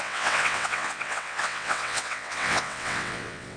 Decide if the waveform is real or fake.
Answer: fake